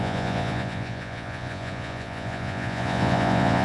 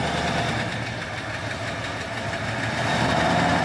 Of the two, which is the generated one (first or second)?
first